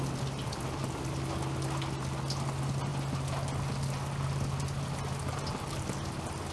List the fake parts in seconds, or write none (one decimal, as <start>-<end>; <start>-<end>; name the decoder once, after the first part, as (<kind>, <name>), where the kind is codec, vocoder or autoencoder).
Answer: none